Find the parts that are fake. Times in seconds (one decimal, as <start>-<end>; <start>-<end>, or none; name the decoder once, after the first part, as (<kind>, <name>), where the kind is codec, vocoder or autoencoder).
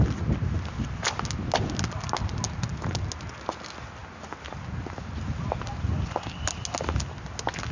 none